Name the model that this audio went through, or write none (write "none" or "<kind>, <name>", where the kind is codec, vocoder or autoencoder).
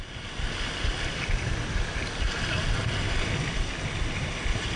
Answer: none